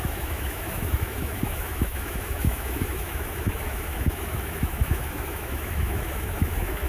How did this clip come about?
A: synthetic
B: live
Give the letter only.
A